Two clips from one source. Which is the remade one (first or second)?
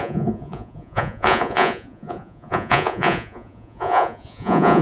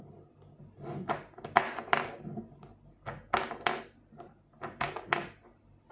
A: first